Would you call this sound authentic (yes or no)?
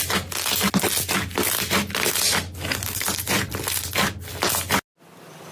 yes